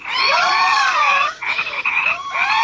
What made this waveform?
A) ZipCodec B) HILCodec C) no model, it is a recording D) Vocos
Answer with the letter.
D